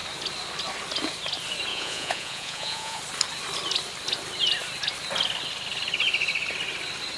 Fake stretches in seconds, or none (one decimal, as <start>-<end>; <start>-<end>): 1.7-3.0